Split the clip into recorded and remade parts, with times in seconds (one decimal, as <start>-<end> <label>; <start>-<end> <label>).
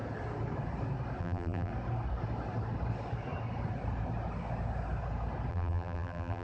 0.0-1.2 recorded; 1.2-1.7 remade; 1.7-5.5 recorded; 5.5-6.4 remade